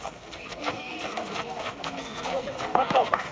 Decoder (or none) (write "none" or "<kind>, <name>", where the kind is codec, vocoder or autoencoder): codec, SNAC